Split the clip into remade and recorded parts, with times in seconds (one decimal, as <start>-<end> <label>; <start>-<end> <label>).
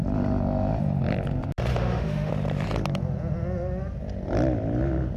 0.0-1.7 recorded; 1.7-2.3 remade; 2.3-5.2 recorded